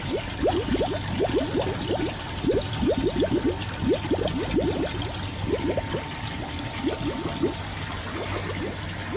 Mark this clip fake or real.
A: real